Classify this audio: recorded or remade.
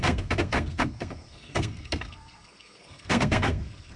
remade